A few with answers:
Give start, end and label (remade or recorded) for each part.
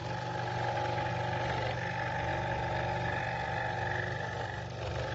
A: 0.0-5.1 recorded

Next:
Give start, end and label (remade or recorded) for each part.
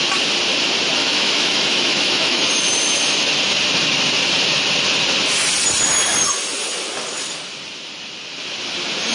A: 0.0-1.0 recorded; 1.0-2.4 remade; 2.4-9.1 recorded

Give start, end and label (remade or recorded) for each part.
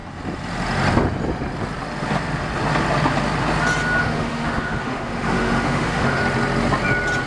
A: 0.0-4.0 recorded; 4.0-6.2 remade; 6.2-7.3 recorded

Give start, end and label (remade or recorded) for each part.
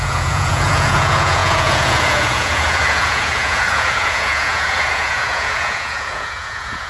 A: 0.0-6.9 remade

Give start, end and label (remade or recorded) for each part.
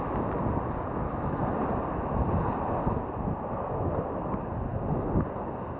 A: 0.0-5.8 recorded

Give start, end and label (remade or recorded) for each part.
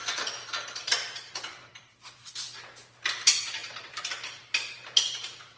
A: 0.0-2.6 remade; 2.6-3.6 recorded; 3.6-5.6 remade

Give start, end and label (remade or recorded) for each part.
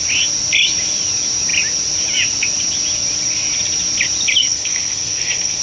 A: 0.0-4.4 recorded; 4.4-5.6 remade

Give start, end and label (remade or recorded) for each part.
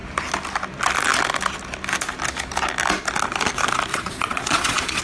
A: 0.0-3.9 recorded; 3.9-5.0 remade